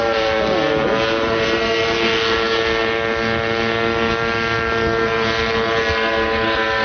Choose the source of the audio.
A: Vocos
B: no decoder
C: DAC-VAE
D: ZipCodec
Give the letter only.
B